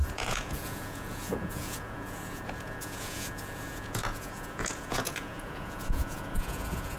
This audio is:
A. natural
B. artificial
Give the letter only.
B